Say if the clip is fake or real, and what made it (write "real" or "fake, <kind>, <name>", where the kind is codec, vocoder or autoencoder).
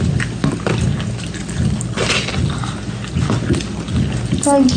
real